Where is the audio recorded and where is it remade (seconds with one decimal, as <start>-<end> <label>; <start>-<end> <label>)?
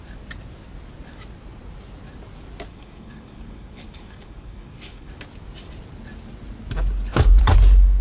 0.0-2.7 recorded; 2.7-5.1 remade; 5.1-8.0 recorded